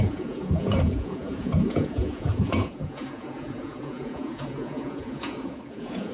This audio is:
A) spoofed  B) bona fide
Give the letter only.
A